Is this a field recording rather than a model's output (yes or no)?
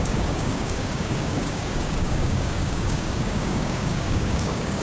no